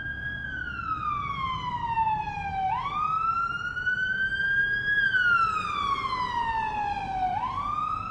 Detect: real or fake real